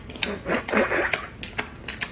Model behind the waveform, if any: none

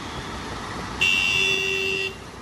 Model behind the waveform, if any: none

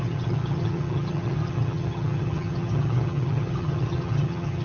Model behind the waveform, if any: vocoder, HiFi-GAN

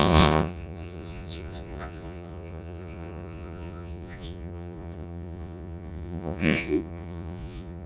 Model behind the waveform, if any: vocoder, Vocos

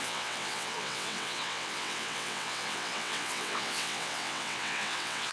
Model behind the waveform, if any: vocoder, WaveNeXt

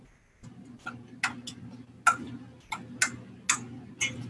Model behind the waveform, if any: none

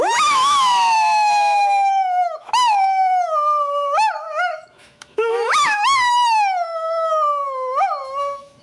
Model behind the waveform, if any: autoencoder, DAC-VAE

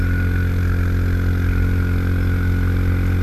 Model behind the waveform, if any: none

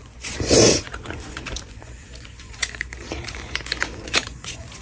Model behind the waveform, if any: vocoder, Vocos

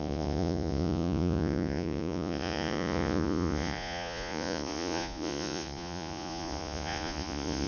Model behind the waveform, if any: vocoder, Vocos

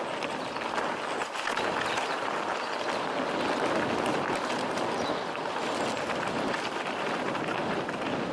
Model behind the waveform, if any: none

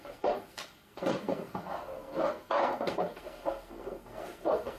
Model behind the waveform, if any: codec, SNAC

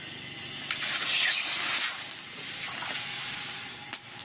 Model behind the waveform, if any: none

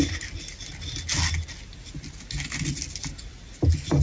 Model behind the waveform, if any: none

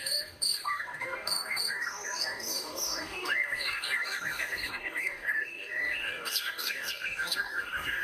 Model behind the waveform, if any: codec, DAC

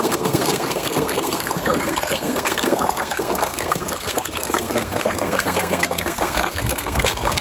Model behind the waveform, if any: codec, SNAC